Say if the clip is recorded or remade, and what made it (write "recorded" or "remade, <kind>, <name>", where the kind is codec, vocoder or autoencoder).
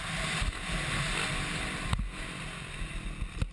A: recorded